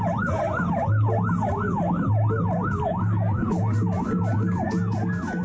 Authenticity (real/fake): real